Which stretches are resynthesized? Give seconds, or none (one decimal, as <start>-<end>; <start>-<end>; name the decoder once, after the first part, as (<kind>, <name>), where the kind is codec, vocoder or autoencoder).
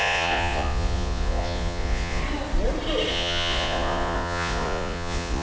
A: 0.0-2.2 (vocoder, Vocos); 3.1-5.4